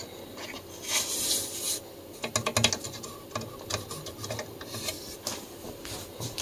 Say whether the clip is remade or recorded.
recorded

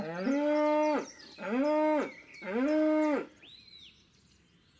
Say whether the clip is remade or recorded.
recorded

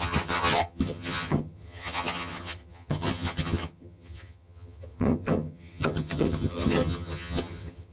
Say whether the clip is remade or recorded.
remade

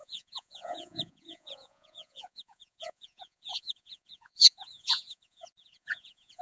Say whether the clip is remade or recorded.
remade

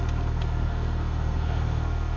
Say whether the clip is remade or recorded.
remade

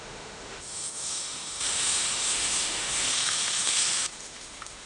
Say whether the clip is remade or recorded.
remade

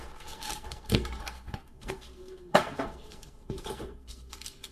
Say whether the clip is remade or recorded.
remade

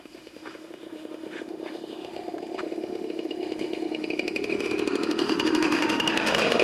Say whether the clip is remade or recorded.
remade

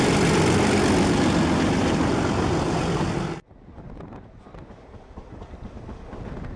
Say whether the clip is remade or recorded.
recorded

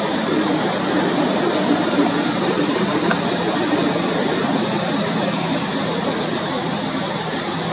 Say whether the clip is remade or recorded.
remade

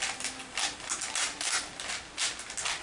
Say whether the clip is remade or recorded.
recorded